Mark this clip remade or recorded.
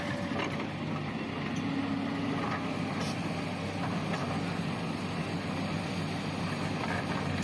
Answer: recorded